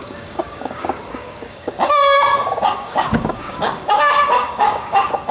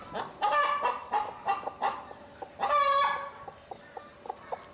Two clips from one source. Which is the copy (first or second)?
first